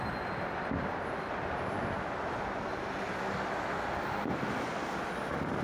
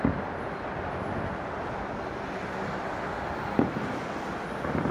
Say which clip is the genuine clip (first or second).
first